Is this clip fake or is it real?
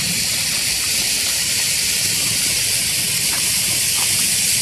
real